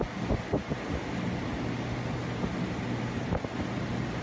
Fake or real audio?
real